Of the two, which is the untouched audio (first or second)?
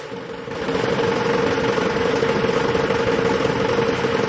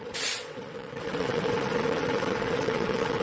first